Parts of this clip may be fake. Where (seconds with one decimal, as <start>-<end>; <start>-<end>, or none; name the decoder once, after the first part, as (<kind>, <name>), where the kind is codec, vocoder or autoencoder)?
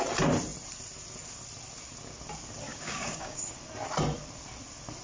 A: 2.7-3.4 (codec, DAC)